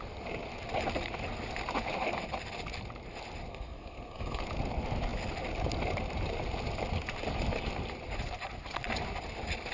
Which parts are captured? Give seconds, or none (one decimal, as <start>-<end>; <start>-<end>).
0.0-3.5; 4.4-9.7